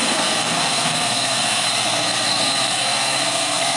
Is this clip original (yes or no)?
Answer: no